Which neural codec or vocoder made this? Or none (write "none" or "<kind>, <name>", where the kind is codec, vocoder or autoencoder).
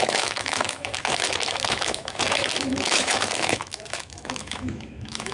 autoencoder, DAC-VAE